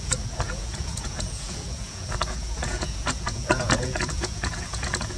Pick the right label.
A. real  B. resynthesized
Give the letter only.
B